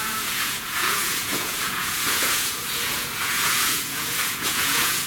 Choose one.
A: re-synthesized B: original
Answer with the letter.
A